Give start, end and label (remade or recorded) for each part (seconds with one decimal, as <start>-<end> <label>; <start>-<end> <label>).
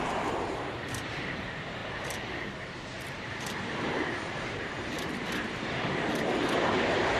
0.0-7.2 remade